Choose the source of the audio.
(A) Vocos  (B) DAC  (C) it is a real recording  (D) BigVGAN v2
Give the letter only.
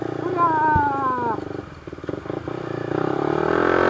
C